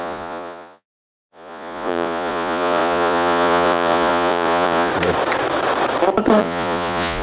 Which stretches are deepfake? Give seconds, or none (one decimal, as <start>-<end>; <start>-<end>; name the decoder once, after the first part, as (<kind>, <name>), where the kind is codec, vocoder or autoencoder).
0.0-4.9 (vocoder, Vocos); 6.4-7.2